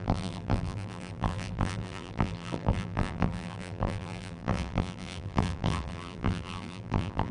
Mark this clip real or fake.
fake